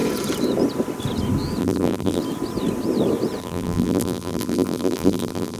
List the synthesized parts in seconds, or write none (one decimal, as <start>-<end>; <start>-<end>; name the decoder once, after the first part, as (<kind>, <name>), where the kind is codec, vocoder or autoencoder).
1.6-2.2 (vocoder, BigVGAN v2); 3.4-5.6